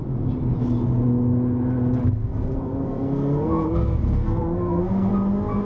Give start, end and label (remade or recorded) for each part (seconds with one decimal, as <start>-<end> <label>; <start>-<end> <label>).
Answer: 0.0-2.0 recorded; 2.0-5.1 remade; 5.1-5.6 recorded